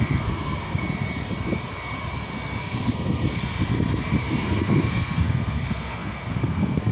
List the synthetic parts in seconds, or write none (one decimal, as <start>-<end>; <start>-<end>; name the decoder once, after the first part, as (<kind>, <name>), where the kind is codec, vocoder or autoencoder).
0.0-0.8 (codec, SNAC); 2.6-3.5; 4.2-6.9